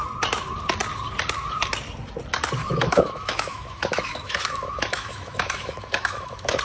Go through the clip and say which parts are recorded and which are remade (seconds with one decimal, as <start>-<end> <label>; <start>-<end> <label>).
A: 0.0-2.6 recorded; 2.6-6.6 remade